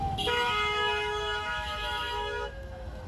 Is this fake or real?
fake